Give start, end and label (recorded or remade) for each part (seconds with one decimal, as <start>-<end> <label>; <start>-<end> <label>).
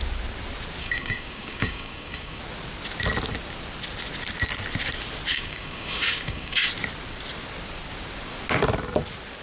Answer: 0.0-0.8 recorded; 0.8-2.4 remade; 2.4-5.3 recorded; 5.3-6.7 remade; 6.7-9.4 recorded